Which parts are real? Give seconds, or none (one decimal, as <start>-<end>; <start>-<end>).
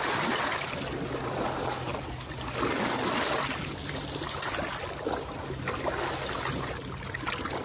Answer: 0.0-7.6